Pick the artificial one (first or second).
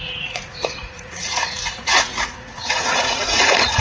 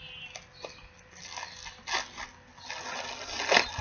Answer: first